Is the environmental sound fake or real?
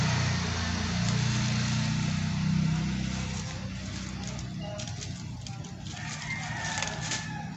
real